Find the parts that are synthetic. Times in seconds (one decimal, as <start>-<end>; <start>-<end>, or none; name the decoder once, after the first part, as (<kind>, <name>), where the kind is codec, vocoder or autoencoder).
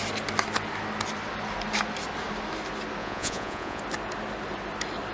3.0-3.8 (vocoder, Vocos)